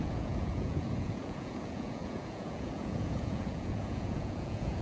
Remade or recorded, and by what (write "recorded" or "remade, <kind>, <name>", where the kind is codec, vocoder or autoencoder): remade, vocoder, Vocos